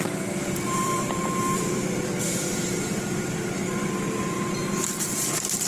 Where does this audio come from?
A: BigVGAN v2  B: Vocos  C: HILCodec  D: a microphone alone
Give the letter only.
A